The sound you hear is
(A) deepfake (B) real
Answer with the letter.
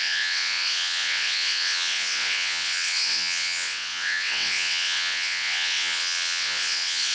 A